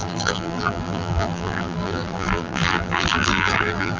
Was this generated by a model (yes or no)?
yes